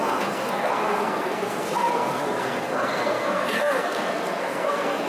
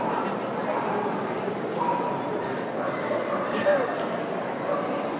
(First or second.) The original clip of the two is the second